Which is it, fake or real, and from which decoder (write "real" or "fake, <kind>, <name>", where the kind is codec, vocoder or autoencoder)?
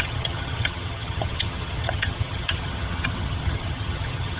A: fake, vocoder, HiFi-GAN